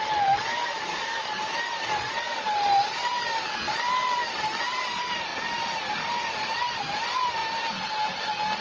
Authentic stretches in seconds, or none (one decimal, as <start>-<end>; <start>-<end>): 0.0-0.5; 1.3-8.6